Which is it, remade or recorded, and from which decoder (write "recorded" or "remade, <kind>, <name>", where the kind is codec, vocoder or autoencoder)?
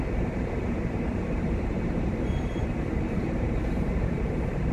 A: remade, vocoder, BigVGAN v2